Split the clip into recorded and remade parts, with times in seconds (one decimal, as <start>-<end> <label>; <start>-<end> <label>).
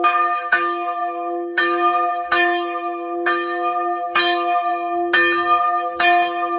0.0-4.7 remade; 4.7-5.6 recorded; 5.6-6.6 remade